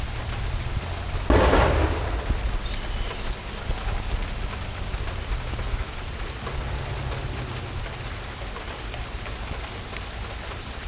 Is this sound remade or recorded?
recorded